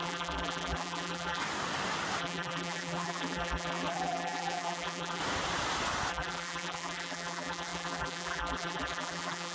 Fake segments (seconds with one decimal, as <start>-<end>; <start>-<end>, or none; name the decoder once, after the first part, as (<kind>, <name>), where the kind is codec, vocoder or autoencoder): 0.0-1.4 (vocoder, BigVGAN v2); 2.2-5.2; 6.1-9.5

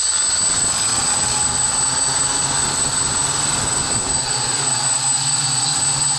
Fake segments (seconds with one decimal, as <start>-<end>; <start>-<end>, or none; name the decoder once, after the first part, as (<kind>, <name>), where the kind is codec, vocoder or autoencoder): none

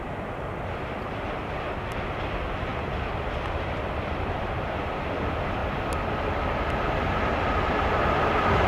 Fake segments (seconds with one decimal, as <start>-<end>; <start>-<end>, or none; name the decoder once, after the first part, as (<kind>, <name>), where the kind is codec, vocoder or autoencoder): 2.7-4.4 (vocoder, BigVGAN v2)

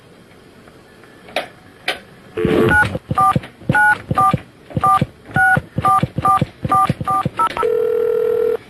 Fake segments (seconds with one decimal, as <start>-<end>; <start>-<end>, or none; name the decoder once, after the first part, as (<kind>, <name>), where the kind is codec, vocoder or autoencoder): none

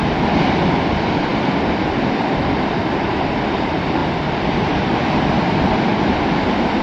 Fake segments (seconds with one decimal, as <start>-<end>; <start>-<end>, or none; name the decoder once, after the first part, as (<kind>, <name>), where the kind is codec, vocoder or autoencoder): 1.3-3.1 (vocoder, BigVGAN v2); 4.0-4.7; 5.9-6.8

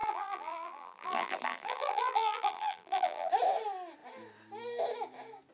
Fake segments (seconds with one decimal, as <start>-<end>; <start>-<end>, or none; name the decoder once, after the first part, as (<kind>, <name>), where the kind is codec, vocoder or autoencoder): 0.0-3.3 (vocoder, BigVGAN v2)